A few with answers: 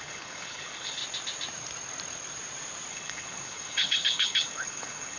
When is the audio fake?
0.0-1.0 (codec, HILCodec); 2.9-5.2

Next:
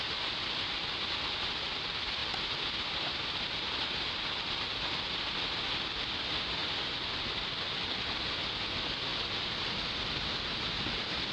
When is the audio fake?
none

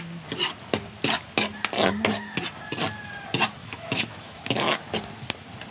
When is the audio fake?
3.6-4.8 (autoencoder, DAC-VAE)

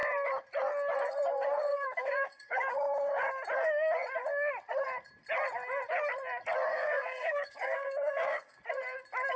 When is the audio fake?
1.7-3.3 (codec, DAC); 6.7-8.6